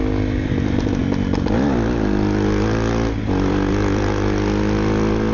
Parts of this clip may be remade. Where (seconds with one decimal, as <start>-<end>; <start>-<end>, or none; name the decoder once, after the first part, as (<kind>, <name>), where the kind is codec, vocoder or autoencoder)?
none